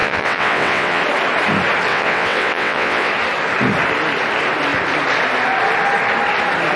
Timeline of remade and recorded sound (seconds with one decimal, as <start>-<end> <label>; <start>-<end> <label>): 0.0-1.0 remade; 1.0-1.9 recorded; 1.9-3.1 remade; 3.1-6.8 recorded